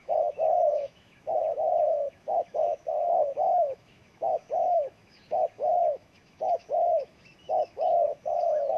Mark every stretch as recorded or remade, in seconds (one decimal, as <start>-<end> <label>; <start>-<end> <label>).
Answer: 0.0-8.8 remade

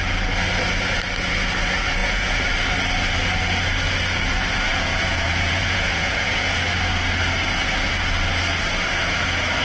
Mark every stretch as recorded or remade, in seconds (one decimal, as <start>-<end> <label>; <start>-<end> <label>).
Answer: 0.0-2.0 recorded; 2.0-2.5 remade; 2.5-4.7 recorded; 4.7-6.6 remade; 6.6-9.6 recorded

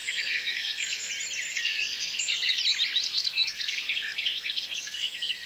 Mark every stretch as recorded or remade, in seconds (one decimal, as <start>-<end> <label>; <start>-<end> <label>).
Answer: 0.0-1.1 remade; 1.1-1.5 recorded; 1.5-2.6 remade; 2.6-3.1 recorded; 3.1-5.5 remade

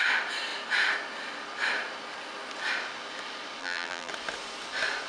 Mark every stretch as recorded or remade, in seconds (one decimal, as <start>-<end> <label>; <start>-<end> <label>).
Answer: 0.0-3.6 recorded; 3.6-4.1 remade; 4.1-5.1 recorded